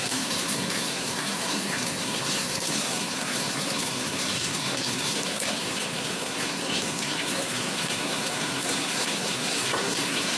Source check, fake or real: fake